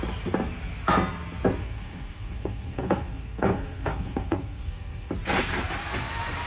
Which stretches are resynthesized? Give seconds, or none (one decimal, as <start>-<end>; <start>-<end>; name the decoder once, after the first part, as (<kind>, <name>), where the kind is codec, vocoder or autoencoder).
1.6-5.1 (codec, SNAC)